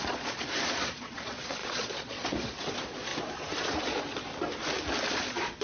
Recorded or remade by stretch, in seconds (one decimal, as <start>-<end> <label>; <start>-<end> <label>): 0.0-3.1 remade; 3.1-3.8 recorded; 3.8-4.3 remade; 4.3-5.1 recorded; 5.1-5.6 remade